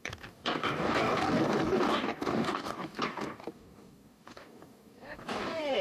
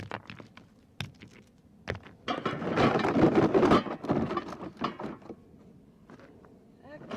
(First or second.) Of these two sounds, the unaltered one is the second